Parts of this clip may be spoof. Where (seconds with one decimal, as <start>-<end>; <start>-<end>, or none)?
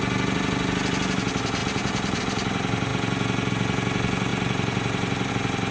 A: 1.6-2.2; 4.3-5.3